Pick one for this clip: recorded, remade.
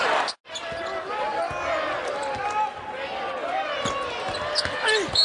recorded